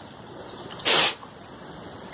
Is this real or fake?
real